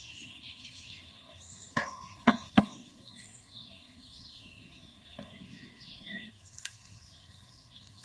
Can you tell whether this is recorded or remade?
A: remade